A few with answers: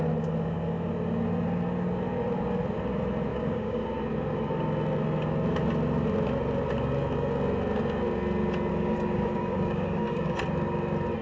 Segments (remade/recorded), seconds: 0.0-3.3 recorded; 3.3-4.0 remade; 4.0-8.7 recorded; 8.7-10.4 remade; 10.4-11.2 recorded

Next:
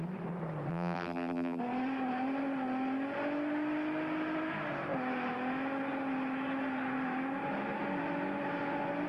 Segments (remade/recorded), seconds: 0.0-0.7 recorded; 0.7-1.6 remade; 1.6-9.1 recorded

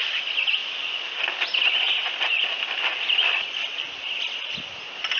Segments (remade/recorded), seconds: 0.0-0.6 recorded; 0.6-1.3 remade; 1.3-5.2 recorded